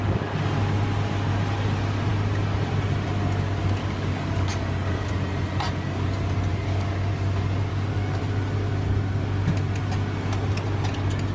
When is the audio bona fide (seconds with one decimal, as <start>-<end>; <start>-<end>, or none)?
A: 0.0-3.8; 5.1-6.5; 7.1-7.7; 8.2-11.3